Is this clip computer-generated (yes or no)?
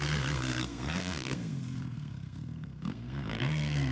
yes